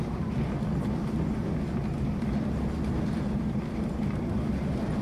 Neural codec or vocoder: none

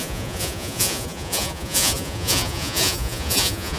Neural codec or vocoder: vocoder, Vocos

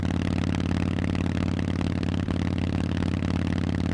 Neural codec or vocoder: none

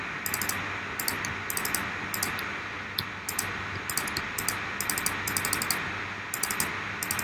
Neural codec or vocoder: none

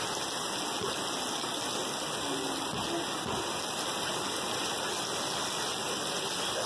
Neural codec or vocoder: none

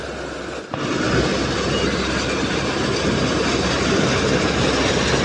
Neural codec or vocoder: none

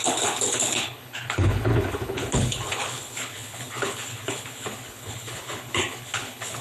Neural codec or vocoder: codec, HILCodec